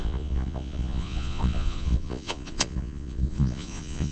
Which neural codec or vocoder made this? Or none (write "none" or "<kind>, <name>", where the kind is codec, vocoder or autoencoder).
vocoder, Vocos